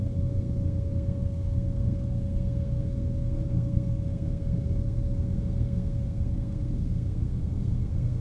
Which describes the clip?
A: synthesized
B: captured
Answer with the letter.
A